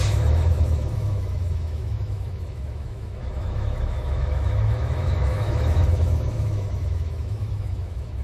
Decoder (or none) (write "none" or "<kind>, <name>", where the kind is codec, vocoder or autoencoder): autoencoder, DAC-VAE